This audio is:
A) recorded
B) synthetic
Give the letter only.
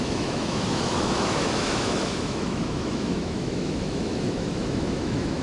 B